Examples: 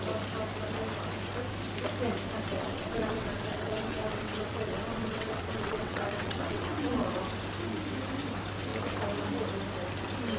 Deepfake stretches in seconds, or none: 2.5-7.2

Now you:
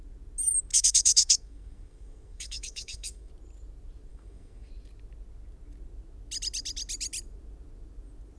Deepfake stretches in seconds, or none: 0.7-3.3; 4.1-4.7

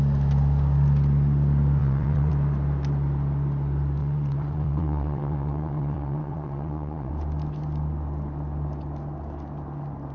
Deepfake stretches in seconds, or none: 1.8-2.3; 4.0-7.1